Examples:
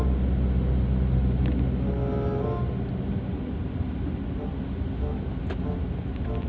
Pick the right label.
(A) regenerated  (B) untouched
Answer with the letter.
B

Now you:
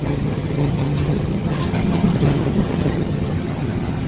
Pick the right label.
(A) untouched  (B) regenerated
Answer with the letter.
B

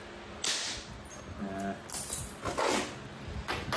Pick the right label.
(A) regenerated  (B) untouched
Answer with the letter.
B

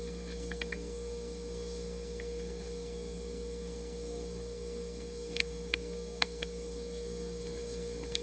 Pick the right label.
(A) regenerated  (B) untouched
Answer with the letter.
A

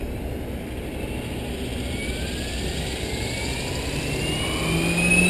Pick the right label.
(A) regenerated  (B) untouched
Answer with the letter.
B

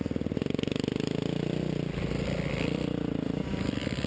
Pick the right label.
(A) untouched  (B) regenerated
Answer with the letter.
A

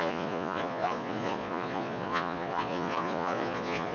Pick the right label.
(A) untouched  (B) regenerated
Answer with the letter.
B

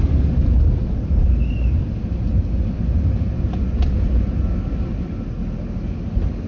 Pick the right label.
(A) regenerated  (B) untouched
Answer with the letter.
B